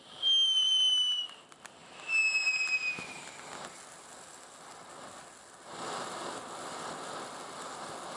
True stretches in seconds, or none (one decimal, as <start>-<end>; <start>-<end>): 0.0-8.2